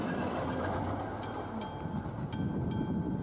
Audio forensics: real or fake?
real